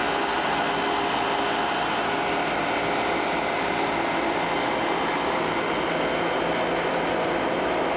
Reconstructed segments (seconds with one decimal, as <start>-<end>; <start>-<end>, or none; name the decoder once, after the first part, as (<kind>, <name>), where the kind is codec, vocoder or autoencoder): none